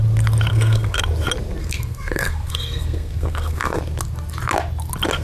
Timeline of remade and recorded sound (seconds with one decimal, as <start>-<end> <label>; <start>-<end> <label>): 0.0-0.5 recorded; 0.5-1.0 remade; 1.0-1.6 recorded; 1.6-3.8 remade; 3.8-5.2 recorded